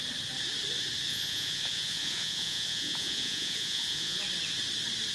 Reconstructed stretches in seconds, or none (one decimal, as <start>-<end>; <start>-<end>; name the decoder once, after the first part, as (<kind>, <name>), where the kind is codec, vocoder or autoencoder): 1.1-4.2 (vocoder, Vocos)